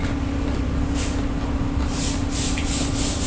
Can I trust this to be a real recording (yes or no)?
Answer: yes